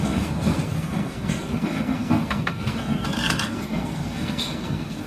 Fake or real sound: fake